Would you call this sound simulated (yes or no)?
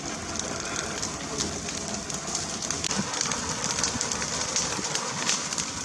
no